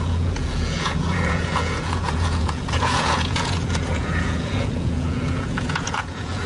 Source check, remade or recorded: remade